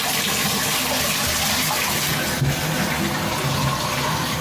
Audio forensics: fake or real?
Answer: real